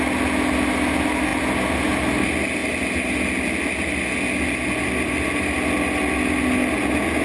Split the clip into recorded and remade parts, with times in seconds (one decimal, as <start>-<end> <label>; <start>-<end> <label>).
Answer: 0.0-7.2 recorded